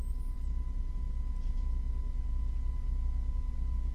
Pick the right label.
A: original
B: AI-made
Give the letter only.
A